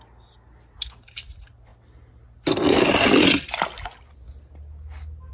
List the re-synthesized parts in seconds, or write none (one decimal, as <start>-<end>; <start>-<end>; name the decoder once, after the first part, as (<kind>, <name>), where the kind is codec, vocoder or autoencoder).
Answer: none